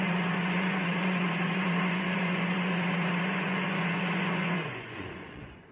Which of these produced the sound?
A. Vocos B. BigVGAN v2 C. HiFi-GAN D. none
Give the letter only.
A